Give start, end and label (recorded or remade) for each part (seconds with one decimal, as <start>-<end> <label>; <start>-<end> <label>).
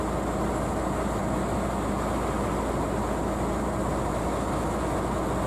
0.0-5.5 recorded